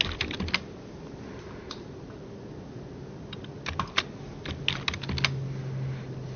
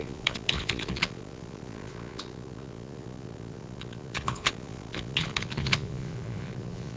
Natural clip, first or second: first